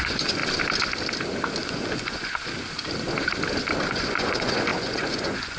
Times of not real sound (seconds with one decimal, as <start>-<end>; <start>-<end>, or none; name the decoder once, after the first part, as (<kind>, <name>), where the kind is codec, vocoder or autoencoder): 0.0-0.4 (vocoder, Vocos); 1.6-2.4; 3.9-5.6